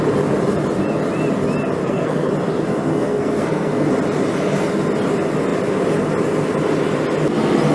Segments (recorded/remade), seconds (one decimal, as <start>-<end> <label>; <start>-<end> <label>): 0.0-1.8 recorded; 1.8-2.3 remade; 2.3-2.9 recorded; 2.9-3.9 remade; 3.9-7.7 recorded